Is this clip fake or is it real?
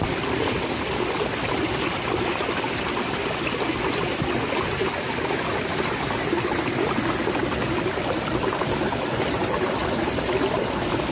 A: real